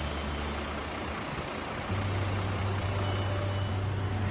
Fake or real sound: real